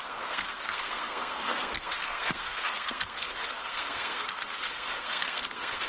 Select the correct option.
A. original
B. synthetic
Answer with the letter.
B